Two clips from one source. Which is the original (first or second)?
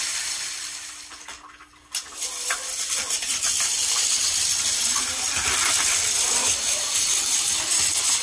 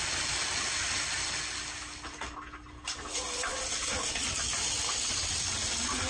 second